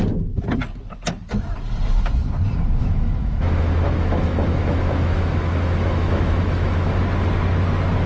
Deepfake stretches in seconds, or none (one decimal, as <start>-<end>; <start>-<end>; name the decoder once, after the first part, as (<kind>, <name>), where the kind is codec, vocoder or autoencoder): 2.8-7.0 (autoencoder, DAC-VAE)